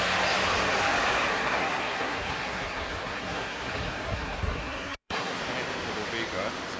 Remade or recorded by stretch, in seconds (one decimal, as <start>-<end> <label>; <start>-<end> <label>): 0.0-1.3 recorded; 1.3-5.4 remade; 5.4-6.8 recorded